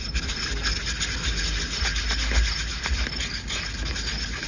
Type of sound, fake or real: real